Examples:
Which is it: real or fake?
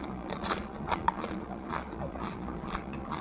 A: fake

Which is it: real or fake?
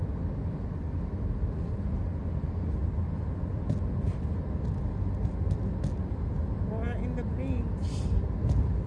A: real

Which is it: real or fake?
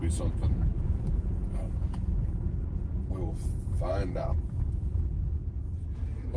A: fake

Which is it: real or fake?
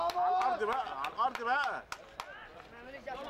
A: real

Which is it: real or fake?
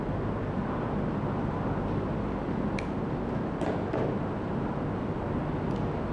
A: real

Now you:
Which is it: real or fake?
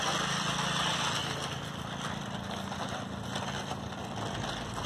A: real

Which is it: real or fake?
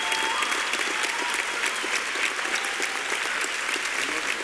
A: real